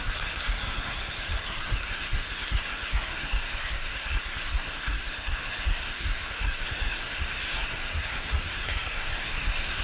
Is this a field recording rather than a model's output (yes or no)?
no